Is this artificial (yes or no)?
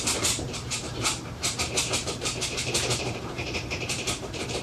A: yes